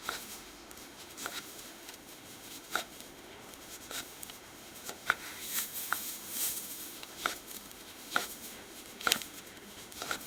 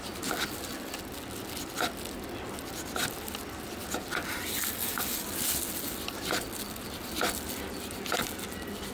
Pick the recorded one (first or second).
second